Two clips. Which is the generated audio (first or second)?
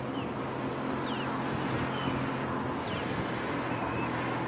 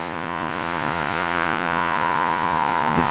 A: second